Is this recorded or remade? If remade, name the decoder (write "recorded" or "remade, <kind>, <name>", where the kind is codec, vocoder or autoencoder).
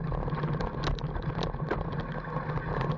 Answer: recorded